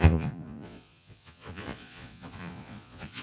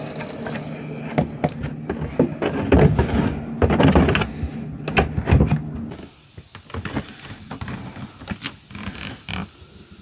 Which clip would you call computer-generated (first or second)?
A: first